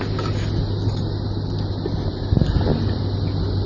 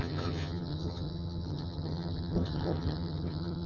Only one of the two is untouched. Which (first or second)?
first